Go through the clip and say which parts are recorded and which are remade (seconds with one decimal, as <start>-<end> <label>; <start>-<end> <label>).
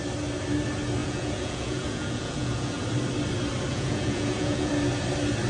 0.0-1.0 recorded; 1.0-2.8 remade; 2.8-3.7 recorded; 3.7-4.7 remade; 4.7-5.5 recorded